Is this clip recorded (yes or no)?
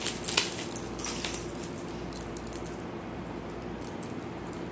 yes